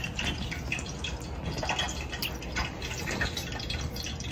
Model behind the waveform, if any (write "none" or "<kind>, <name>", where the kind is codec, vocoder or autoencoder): none